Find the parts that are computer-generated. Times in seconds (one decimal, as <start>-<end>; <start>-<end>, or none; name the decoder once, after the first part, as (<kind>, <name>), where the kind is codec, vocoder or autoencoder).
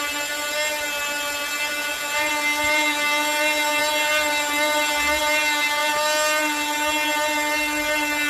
1.8-2.3 (vocoder, Vocos)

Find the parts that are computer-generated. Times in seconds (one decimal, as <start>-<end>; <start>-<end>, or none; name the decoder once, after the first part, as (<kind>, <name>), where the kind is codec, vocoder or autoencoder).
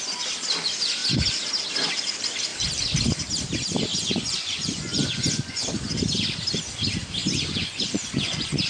3.9-5.8 (vocoder, Vocos); 7.2-8.7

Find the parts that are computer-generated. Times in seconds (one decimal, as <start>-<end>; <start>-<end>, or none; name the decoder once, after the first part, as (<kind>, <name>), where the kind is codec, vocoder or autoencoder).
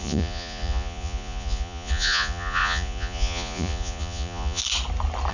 0.0-4.6 (vocoder, Vocos)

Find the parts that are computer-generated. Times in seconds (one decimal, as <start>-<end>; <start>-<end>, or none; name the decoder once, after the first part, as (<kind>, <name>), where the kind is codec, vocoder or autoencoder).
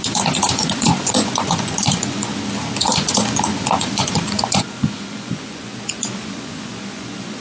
0.0-2.3 (vocoder, Vocos); 2.8-7.4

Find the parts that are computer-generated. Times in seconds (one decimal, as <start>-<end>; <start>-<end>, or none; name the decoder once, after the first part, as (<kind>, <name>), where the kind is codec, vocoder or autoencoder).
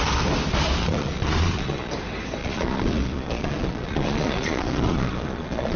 0.8-1.9 (vocoder, Vocos); 2.4-5.8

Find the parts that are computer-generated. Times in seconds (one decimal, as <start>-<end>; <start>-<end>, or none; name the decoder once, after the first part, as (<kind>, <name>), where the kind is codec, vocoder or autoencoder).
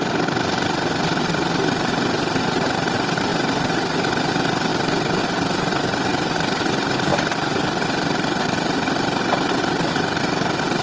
none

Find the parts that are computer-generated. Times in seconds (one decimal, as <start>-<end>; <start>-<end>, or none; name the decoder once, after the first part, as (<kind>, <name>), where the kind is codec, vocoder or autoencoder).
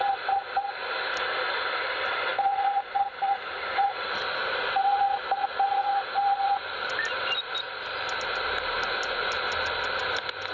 none